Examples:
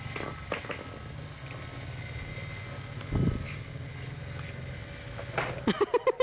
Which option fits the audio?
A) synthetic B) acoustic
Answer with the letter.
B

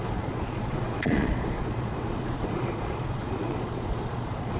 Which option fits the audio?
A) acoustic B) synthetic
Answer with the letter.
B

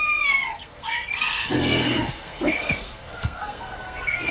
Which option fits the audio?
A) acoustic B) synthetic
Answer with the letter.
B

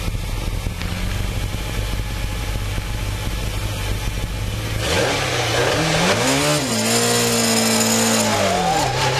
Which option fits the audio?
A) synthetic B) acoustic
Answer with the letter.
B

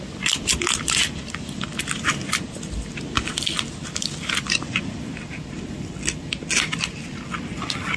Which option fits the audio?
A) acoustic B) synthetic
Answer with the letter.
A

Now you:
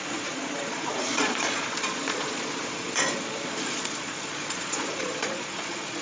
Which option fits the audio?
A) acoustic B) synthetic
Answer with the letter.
B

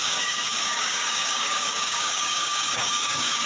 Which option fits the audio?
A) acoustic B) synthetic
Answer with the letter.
B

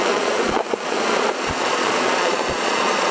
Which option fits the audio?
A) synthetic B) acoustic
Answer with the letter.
A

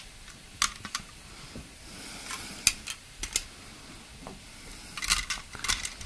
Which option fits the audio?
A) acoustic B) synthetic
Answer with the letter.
A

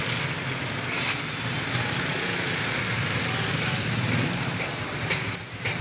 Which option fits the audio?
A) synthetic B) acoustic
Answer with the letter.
B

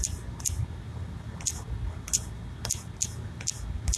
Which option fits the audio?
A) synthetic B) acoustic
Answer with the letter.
B